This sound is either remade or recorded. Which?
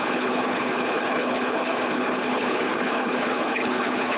remade